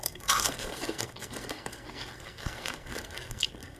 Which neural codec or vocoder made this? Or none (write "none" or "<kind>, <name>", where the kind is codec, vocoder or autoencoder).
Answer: codec, SNAC